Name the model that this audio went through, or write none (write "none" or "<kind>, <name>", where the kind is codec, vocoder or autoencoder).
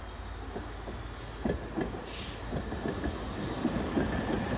none